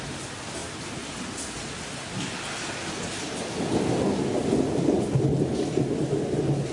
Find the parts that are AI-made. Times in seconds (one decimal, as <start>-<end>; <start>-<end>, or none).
none